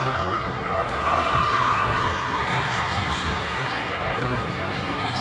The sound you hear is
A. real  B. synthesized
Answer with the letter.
B